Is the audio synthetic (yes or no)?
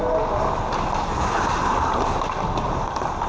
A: no